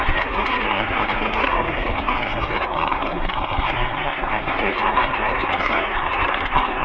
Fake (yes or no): yes